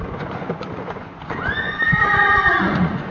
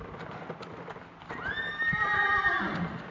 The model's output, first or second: first